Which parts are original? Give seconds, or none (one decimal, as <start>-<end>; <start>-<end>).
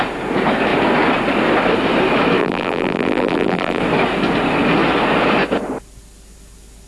0.0-2.4; 3.8-6.9